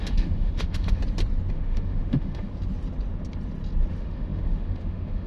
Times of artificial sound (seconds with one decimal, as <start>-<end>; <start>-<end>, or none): 0.0-1.0; 1.5-2.5; 3.9-5.3